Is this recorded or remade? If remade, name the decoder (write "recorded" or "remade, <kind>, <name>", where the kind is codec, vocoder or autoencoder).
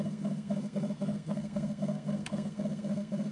remade, codec, SNAC